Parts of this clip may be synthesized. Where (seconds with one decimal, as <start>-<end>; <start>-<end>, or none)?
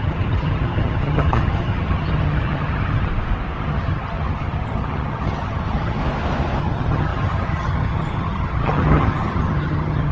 0.0-3.1; 3.6-6.0; 6.6-10.1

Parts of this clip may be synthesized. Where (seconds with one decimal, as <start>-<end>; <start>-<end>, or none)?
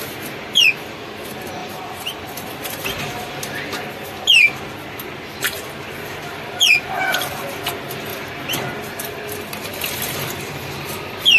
1.6-2.2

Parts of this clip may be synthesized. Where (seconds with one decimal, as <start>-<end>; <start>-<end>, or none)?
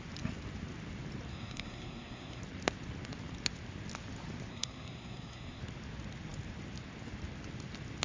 1.3-2.4; 4.5-5.6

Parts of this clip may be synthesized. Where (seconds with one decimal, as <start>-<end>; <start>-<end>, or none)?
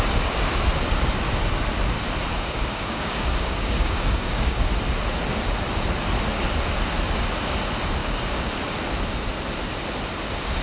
2.3-4.7; 8.0-8.5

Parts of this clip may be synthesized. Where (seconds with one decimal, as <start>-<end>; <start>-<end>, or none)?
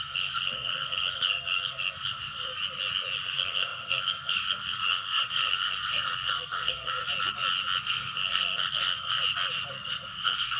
0.0-2.6; 3.2-7.0; 7.8-9.2; 9.7-10.6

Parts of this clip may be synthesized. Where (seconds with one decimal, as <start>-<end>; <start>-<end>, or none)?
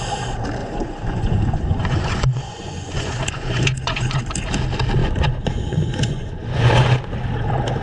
0.6-4.2; 5.0-7.0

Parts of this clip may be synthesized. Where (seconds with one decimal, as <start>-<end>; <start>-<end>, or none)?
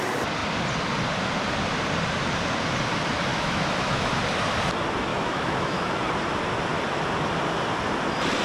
3.3-4.2; 5.1-5.9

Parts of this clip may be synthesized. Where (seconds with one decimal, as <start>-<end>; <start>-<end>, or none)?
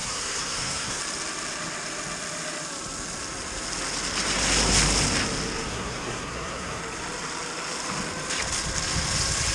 0.0-1.0; 5.7-6.8